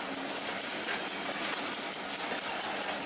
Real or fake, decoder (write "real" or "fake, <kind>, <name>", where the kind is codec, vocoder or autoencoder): real